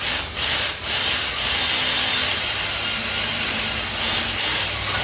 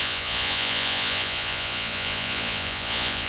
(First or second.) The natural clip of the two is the first